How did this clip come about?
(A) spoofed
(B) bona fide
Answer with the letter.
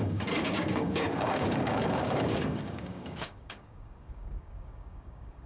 A